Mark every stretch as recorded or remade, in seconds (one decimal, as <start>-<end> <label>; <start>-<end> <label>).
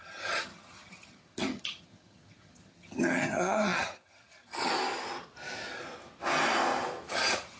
0.0-4.7 remade; 4.7-7.1 recorded; 7.1-7.6 remade